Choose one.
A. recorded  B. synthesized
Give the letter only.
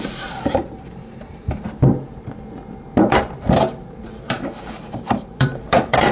B